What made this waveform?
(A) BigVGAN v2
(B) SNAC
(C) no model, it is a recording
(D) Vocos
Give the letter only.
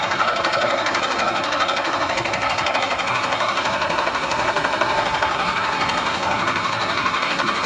B